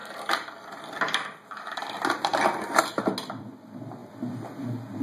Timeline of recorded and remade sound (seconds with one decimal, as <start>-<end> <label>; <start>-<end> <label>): 0.0-0.8 remade; 0.8-1.3 recorded; 1.3-1.8 remade; 1.8-5.0 recorded